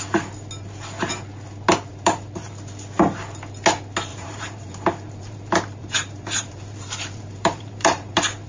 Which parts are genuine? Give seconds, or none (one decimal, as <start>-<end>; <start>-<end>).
0.0-1.9; 2.5-4.1